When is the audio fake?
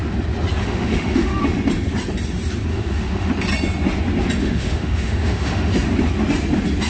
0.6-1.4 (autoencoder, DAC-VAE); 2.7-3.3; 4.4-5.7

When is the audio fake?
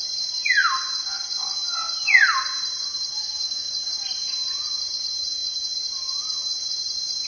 3.2-3.7 (autoencoder, DAC-VAE)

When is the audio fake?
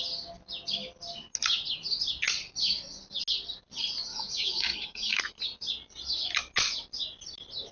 4.1-5.2 (autoencoder, DAC-VAE)